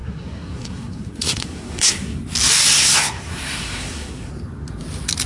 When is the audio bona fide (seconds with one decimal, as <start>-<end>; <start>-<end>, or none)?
2.2-2.7; 4.3-5.3